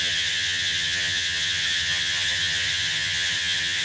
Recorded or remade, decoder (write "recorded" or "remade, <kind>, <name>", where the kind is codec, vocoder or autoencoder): remade, vocoder, HiFi-GAN